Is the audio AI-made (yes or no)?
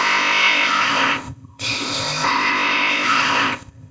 yes